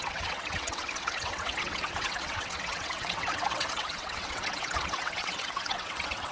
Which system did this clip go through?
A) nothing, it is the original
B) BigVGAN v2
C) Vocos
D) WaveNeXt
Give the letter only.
D